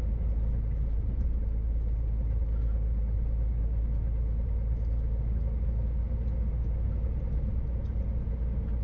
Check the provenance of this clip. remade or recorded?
recorded